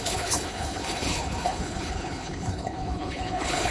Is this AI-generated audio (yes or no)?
yes